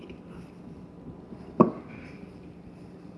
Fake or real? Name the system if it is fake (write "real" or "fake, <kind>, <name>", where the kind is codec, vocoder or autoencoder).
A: real